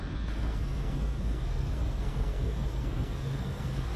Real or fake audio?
fake